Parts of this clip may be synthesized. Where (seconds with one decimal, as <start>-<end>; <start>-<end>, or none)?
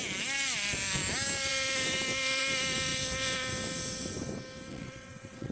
4.7-5.5